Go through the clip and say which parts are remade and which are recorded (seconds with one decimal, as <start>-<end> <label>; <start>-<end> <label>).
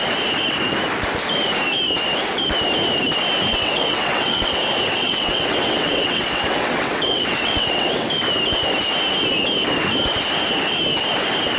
0.0-3.5 recorded; 3.5-4.6 remade; 4.6-5.0 recorded; 5.0-8.1 remade; 8.1-11.6 recorded